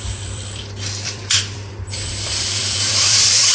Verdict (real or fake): fake